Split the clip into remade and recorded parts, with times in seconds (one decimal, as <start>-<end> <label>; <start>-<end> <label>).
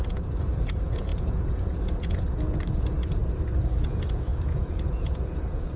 0.0-3.2 remade; 3.2-3.8 recorded; 3.8-5.8 remade